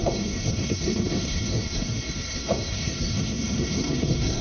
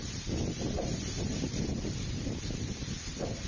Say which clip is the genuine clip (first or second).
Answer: second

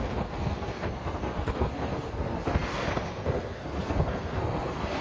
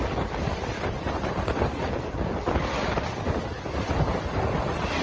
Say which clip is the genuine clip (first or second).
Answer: second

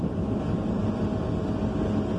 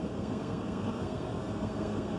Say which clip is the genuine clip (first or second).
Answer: first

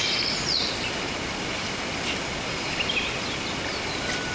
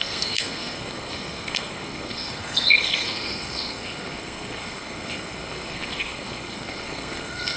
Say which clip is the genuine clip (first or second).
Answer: first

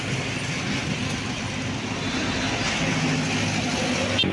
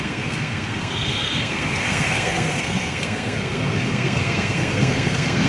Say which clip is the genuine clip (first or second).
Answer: first